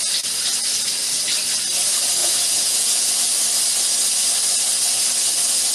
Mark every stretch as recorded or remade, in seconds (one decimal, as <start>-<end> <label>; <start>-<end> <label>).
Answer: 0.0-2.2 recorded; 2.2-3.1 remade; 3.1-5.7 recorded

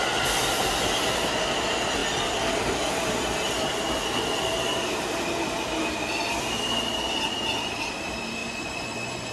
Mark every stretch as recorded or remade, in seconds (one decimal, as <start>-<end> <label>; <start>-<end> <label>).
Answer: 0.0-8.4 recorded; 8.4-9.3 remade